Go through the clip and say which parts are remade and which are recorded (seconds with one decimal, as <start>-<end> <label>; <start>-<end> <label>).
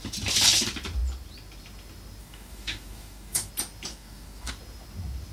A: 0.0-2.2 recorded; 2.2-3.5 remade; 3.5-3.9 recorded; 3.9-4.5 remade; 4.5-5.3 recorded